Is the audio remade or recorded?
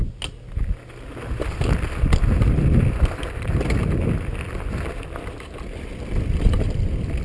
recorded